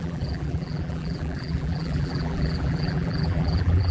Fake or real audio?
fake